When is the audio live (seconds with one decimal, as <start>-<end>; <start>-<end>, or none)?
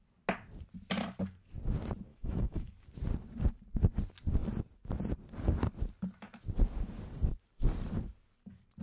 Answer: 0.0-2.1; 2.7-8.8